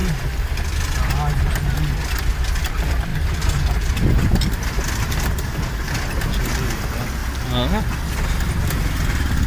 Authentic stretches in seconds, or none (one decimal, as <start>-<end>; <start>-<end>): 0.0-9.5